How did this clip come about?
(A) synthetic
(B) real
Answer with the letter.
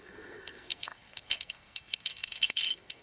A